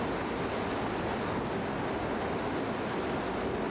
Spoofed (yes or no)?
no